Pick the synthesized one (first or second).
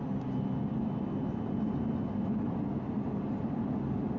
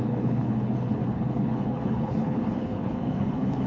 second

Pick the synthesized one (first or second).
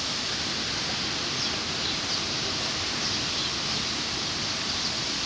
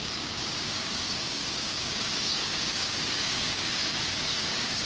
second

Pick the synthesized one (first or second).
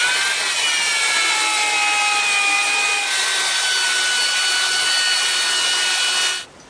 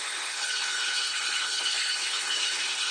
second